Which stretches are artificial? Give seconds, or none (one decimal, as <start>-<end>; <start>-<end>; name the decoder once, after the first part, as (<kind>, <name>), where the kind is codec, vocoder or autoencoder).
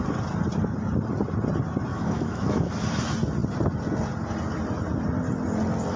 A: 1.9-2.7 (autoencoder, DAC-VAE)